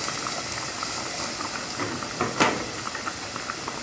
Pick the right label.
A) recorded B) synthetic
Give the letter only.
A